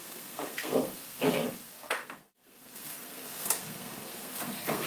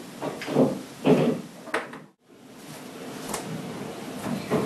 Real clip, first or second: second